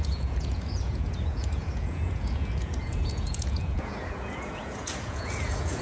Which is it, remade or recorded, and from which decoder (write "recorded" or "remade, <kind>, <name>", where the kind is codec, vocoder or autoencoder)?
remade, vocoder, Vocos